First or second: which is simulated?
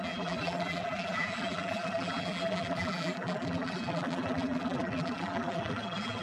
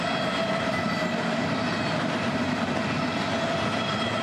first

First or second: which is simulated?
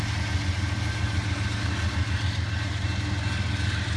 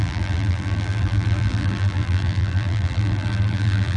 second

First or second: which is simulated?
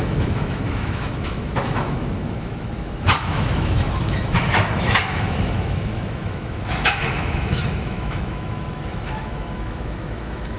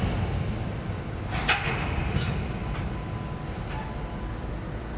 first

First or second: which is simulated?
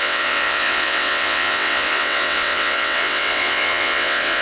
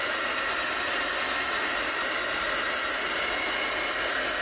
first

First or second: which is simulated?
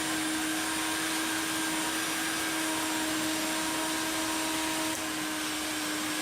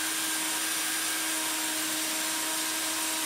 second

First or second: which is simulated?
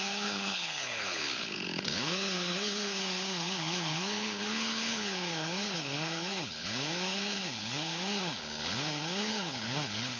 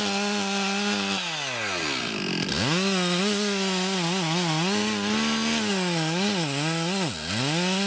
first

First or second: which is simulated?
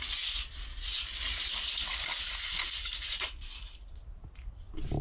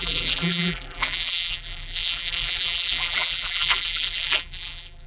second